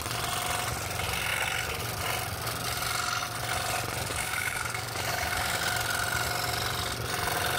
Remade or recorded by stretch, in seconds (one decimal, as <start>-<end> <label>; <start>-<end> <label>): 0.0-4.1 recorded; 4.1-5.6 remade; 5.6-7.6 recorded